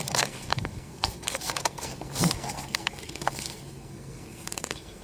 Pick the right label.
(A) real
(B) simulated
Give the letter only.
B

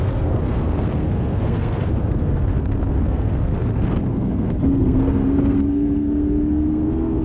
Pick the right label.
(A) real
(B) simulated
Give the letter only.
B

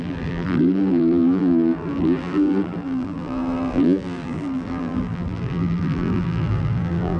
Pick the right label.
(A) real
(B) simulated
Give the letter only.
B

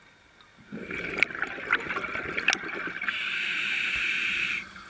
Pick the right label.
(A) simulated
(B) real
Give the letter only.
B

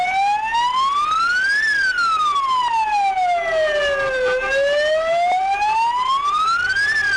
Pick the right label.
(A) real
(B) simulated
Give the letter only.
A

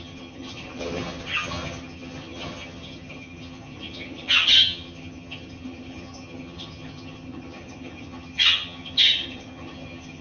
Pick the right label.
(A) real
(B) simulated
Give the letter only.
B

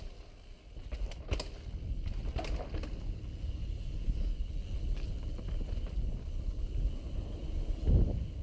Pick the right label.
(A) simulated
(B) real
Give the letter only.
B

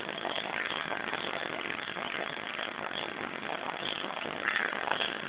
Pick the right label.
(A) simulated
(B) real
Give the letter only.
A